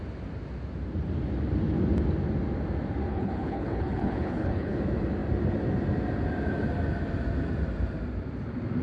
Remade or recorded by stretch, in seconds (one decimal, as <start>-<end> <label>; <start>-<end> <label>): 0.0-3.1 recorded; 3.1-4.8 remade; 4.8-8.8 recorded

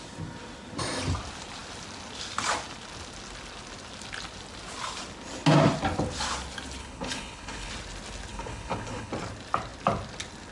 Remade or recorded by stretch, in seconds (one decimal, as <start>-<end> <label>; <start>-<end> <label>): 0.0-6.8 recorded; 6.8-7.7 remade; 7.7-8.3 recorded; 8.3-9.1 remade; 9.1-10.5 recorded

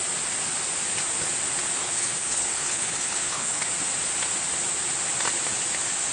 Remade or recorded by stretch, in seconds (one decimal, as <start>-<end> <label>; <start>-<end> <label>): 0.0-1.8 recorded; 1.8-3.7 remade; 3.7-6.1 recorded

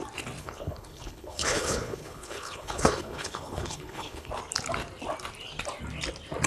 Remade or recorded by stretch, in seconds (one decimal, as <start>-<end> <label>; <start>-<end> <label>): 0.0-0.4 recorded; 0.4-4.3 remade; 4.3-6.5 recorded